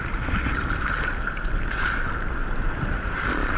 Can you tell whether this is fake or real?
real